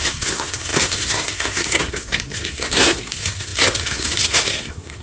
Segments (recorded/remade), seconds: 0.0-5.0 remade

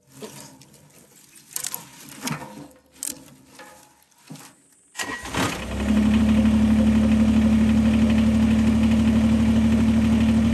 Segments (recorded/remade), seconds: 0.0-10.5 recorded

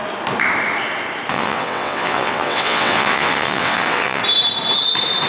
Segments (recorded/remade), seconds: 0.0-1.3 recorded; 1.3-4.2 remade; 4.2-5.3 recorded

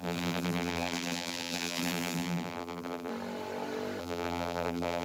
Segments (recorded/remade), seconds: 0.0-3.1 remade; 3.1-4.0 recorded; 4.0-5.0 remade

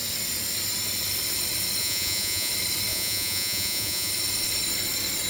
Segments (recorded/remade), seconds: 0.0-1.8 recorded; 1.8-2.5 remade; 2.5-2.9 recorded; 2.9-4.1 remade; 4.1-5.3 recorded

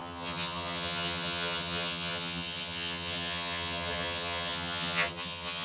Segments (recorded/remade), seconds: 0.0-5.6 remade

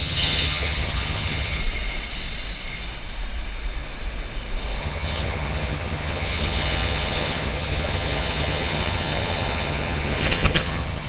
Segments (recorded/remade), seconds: 0.0-1.6 remade; 1.6-4.8 recorded; 4.8-11.1 remade

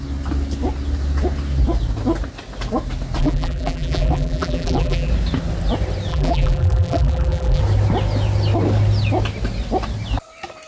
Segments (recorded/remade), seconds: 0.0-3.2 recorded; 3.2-5.1 remade; 5.1-6.1 recorded; 6.1-7.6 remade; 7.6-10.7 recorded